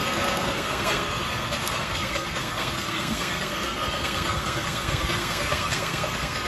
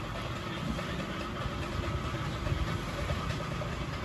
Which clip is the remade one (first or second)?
first